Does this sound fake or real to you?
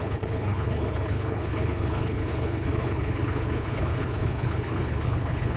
fake